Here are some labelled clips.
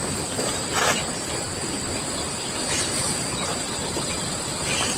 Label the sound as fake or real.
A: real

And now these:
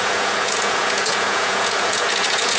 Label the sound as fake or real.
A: fake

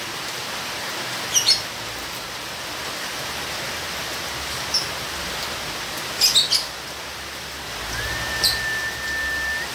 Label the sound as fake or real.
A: real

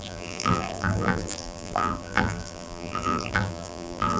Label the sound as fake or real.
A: fake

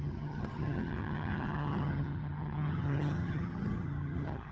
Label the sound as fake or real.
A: fake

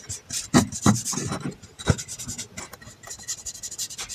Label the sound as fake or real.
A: real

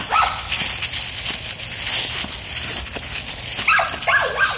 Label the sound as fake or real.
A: real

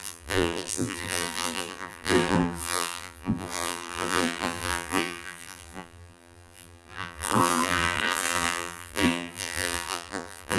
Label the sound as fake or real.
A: fake